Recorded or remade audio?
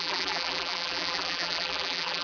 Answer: remade